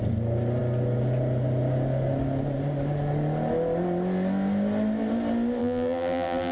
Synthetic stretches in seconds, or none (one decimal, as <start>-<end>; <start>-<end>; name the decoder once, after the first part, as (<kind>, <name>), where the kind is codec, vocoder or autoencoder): 5.6-6.5 (vocoder, BigVGAN v2)